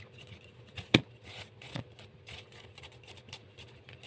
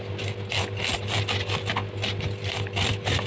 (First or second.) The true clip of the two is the second